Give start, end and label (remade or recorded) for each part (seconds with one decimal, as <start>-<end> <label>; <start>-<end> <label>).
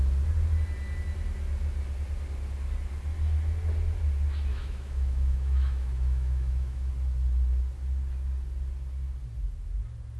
0.0-4.5 recorded; 4.5-6.9 remade; 6.9-10.2 recorded